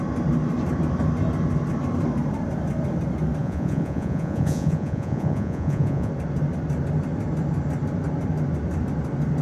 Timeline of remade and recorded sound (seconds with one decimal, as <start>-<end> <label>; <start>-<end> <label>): 0.0-3.4 recorded; 3.4-6.1 remade; 6.1-9.4 recorded

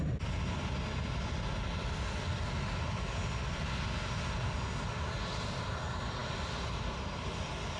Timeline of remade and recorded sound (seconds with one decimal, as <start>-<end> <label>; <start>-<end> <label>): 0.0-7.8 recorded

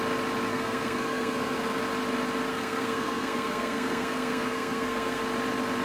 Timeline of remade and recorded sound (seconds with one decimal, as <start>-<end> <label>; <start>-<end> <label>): 0.0-0.5 recorded; 0.5-1.8 remade; 1.8-2.5 recorded; 2.5-5.2 remade; 5.2-5.8 recorded

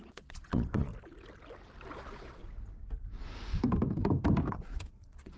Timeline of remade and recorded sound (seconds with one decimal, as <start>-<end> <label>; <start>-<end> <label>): 0.0-0.9 remade; 0.9-1.9 recorded; 1.9-2.4 remade; 2.4-4.5 recorded; 4.5-5.4 remade

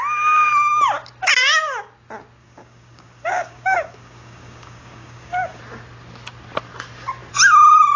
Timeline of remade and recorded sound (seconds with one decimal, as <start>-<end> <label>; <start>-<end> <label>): 0.0-2.4 recorded; 2.4-5.6 remade; 5.6-8.0 recorded

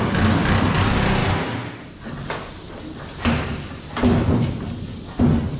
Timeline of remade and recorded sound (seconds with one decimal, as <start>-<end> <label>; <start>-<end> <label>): 0.0-5.6 recorded

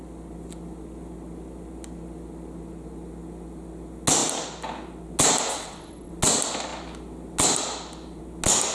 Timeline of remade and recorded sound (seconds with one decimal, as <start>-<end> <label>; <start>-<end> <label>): 0.0-5.5 recorded; 5.5-6.1 remade; 6.1-8.7 recorded

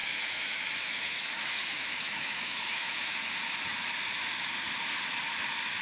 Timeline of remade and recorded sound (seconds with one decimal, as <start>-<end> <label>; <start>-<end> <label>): 0.0-3.3 remade; 3.3-3.7 recorded; 3.7-4.5 remade; 4.5-5.8 recorded